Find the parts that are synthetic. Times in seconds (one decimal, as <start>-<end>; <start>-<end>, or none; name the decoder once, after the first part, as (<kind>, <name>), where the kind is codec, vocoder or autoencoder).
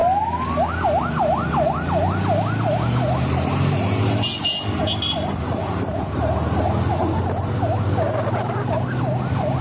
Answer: none